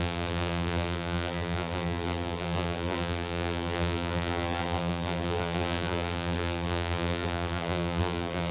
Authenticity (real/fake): fake